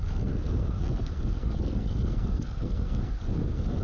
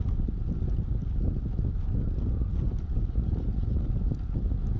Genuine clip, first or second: second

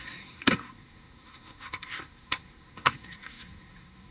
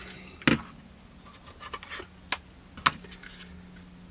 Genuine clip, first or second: second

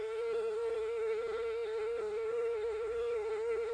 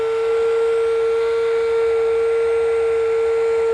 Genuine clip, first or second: second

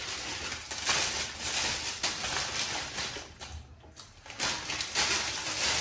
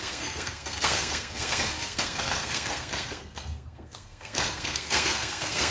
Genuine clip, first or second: first